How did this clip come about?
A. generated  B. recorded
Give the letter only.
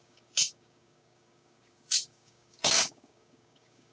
A